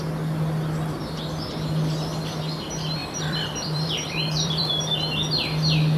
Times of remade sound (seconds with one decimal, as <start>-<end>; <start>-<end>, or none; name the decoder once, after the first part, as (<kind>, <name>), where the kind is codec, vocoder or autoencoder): 3.0-4.8 (vocoder, BigVGAN v2)